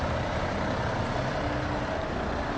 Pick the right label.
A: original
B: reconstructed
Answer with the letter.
A